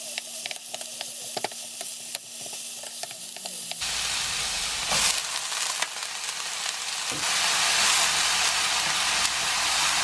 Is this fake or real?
real